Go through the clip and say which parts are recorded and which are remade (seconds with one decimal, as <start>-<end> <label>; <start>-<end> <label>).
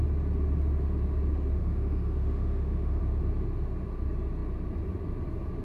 0.0-1.6 recorded; 1.6-3.0 remade; 3.0-5.6 recorded